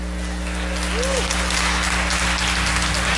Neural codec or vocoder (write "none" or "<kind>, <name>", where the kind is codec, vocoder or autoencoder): none